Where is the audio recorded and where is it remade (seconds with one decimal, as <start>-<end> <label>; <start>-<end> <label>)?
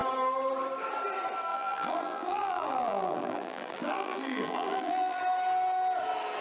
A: 0.0-1.5 recorded; 1.5-5.2 remade; 5.2-6.4 recorded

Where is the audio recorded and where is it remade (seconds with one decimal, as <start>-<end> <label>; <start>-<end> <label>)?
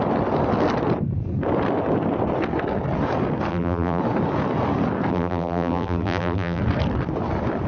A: 0.0-3.5 recorded; 3.5-4.0 remade; 4.0-5.1 recorded; 5.1-6.6 remade; 6.6-7.7 recorded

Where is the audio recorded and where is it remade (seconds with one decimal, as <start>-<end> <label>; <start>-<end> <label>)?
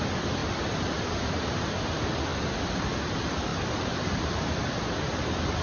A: 0.0-0.4 recorded; 0.4-1.8 remade; 1.8-2.3 recorded; 2.3-3.1 remade; 3.1-3.5 recorded; 3.5-4.5 remade; 4.5-5.6 recorded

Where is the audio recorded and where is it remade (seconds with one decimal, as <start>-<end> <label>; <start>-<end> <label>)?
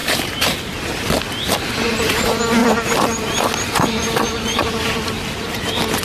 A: 0.0-0.6 remade; 0.6-6.0 recorded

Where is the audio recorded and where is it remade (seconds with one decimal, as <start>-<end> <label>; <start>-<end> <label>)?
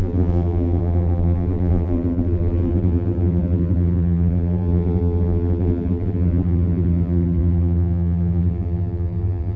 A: 0.0-9.6 remade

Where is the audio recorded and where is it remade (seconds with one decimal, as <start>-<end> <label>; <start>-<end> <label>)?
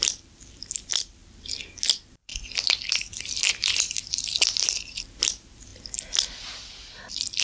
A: 0.0-1.2 remade; 1.2-1.9 recorded; 1.9-2.3 remade; 2.3-2.9 recorded; 2.9-5.7 remade; 5.7-7.4 recorded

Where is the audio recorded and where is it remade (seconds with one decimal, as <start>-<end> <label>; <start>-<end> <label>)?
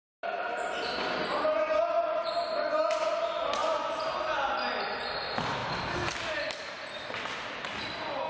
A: 0.0-3.6 recorded; 3.6-4.2 remade; 4.2-8.3 recorded